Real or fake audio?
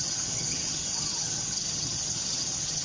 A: fake